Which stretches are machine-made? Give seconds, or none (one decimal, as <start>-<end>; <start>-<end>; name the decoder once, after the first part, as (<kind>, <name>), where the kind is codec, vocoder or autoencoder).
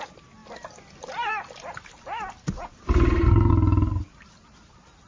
none